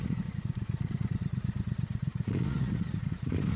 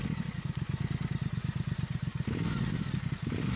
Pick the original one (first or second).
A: second